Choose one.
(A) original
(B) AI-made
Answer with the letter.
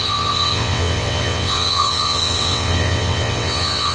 B